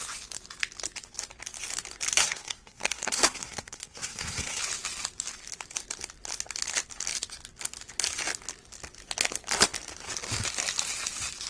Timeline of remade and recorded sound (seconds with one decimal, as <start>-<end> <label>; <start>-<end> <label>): 0.0-2.2 recorded; 2.2-4.6 remade; 4.6-11.5 recorded

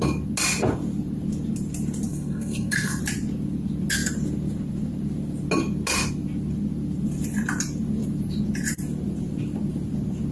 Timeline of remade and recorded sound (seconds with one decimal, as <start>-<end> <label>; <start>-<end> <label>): 0.0-2.1 recorded; 2.1-3.0 remade; 3.0-10.3 recorded